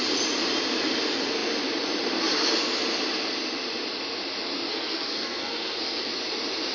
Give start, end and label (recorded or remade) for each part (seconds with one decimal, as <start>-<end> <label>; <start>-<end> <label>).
0.0-4.7 recorded; 4.7-6.1 remade; 6.1-6.7 recorded